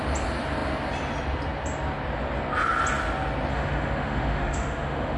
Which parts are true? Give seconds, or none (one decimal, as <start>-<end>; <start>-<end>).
0.0-3.5